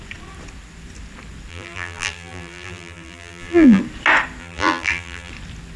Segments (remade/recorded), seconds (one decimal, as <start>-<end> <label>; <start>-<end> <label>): 0.0-1.5 recorded; 1.5-3.8 remade; 3.8-4.4 recorded; 4.4-5.3 remade; 5.3-5.8 recorded